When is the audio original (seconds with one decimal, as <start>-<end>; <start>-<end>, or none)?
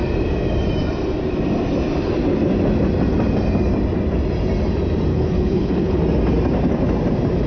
0.0-5.1; 6.0-7.5